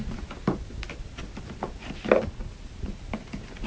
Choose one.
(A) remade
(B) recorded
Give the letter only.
B